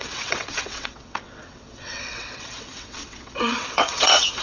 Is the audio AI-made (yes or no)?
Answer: yes